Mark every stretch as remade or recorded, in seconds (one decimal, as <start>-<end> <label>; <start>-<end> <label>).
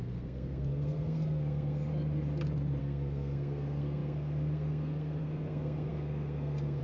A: 0.0-1.9 remade; 1.9-2.8 recorded; 2.8-6.8 remade